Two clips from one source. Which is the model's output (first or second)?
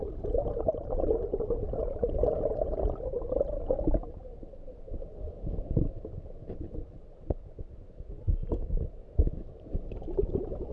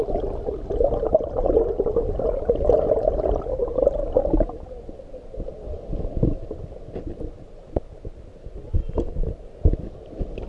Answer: first